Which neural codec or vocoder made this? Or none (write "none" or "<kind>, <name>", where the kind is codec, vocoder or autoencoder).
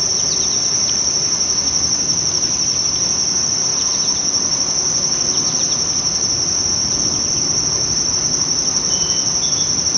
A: none